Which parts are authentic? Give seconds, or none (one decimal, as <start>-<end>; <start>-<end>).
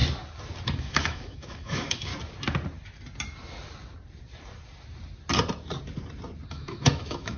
0.0-0.8; 2.1-6.5